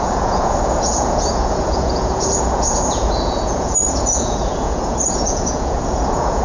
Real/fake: fake